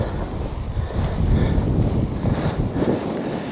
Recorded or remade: recorded